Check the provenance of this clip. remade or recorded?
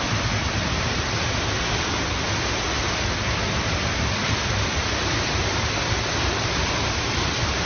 recorded